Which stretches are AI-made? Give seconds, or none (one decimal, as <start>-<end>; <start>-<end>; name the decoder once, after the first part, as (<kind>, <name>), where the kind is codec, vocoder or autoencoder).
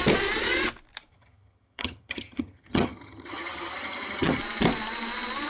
1.1-4.4 (vocoder, HiFi-GAN)